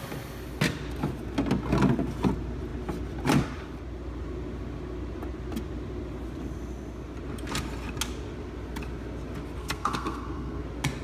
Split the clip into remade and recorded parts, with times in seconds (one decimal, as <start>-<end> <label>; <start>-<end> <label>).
0.0-9.6 recorded; 9.6-10.6 remade; 10.6-11.0 recorded